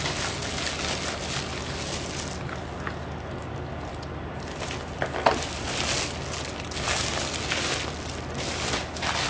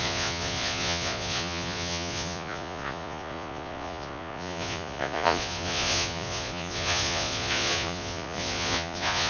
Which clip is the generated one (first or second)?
second